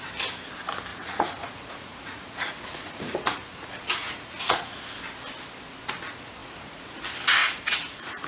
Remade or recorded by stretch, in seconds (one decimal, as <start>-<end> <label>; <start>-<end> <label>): 0.0-0.9 recorded; 0.9-4.8 remade; 4.8-6.4 recorded; 6.4-7.0 remade; 7.0-7.4 recorded; 7.4-8.3 remade